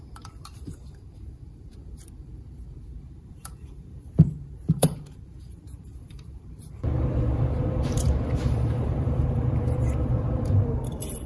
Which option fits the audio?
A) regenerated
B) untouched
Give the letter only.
A